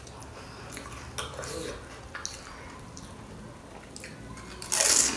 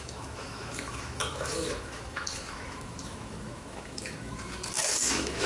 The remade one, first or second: second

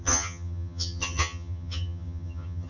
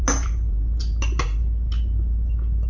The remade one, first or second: first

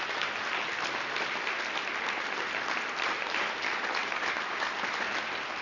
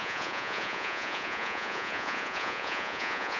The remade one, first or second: second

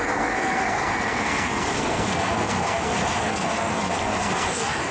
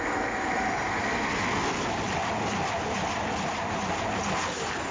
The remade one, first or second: first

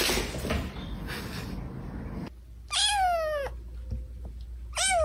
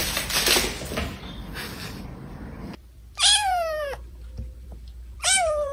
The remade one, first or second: second